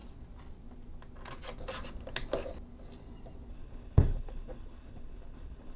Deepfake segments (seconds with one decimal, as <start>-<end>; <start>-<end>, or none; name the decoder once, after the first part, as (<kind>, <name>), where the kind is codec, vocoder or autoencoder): 3.5-5.8 (codec, HILCodec)